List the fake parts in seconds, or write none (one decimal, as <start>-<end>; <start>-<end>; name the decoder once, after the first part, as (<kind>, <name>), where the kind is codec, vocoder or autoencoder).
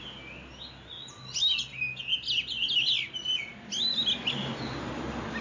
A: none